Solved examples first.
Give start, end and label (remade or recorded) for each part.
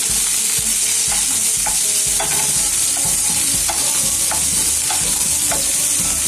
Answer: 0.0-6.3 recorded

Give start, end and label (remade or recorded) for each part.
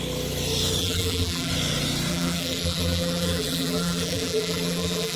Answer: 0.0-0.8 recorded; 0.8-1.5 remade; 1.5-2.1 recorded; 2.1-5.2 remade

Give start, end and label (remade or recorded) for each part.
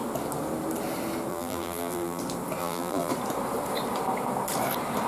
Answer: 0.0-1.3 recorded; 1.3-2.2 remade; 2.2-2.6 recorded; 2.6-3.1 remade; 3.1-5.1 recorded